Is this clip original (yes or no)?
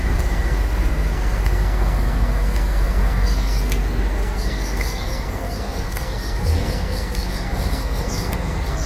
no